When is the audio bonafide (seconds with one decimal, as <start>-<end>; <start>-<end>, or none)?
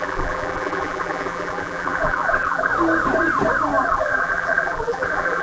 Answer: 2.7-3.8